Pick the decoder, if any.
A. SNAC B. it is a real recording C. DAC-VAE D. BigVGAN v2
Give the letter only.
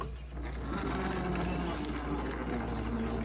B